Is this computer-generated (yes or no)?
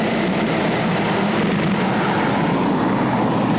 no